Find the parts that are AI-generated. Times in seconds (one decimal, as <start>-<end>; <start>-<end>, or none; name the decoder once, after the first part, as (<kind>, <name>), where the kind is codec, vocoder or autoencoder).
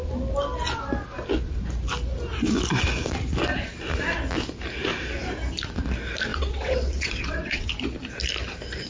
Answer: 6.3-7.7 (vocoder, WaveNeXt)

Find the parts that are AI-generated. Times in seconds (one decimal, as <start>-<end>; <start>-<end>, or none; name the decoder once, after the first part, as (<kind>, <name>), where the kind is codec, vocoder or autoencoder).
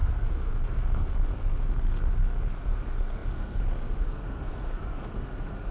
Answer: 0.0-5.7 (codec, SNAC)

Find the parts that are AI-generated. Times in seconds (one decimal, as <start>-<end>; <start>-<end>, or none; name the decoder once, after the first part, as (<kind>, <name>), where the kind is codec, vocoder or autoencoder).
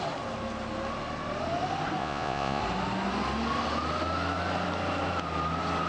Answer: 2.0-2.6 (vocoder, Vocos)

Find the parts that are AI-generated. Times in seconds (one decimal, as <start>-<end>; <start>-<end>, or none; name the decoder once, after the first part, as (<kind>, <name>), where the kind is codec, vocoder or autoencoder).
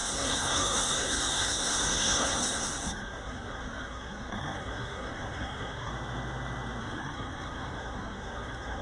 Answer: 0.0-5.9 (codec, SNAC); 6.8-8.8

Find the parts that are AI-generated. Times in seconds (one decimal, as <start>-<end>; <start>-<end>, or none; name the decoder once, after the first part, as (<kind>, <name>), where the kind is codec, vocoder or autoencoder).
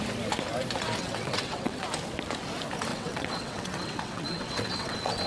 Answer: 1.0-1.8 (vocoder, WaveNeXt); 2.9-5.3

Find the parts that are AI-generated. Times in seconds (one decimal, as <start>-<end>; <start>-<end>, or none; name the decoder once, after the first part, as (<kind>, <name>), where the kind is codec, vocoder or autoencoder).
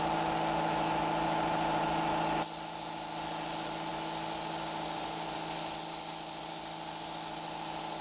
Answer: none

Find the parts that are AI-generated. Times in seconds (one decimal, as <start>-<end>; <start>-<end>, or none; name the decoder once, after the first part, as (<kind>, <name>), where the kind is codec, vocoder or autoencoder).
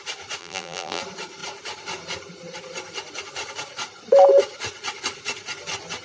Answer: 0.4-1.0 (vocoder, BigVGAN v2)